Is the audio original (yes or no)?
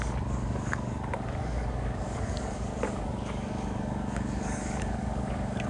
no